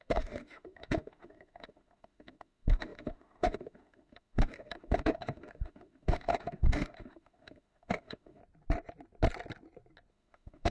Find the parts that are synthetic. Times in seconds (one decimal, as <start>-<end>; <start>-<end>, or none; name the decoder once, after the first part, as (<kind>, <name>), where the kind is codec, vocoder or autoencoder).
0.0-8.4 (autoencoder, DAC-VAE); 10.1-10.7